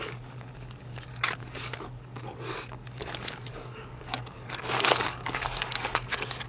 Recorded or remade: remade